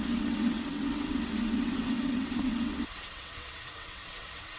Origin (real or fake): fake